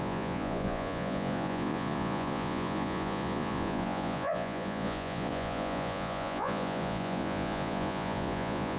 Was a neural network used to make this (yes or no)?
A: yes